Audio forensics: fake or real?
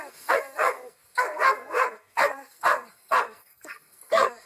fake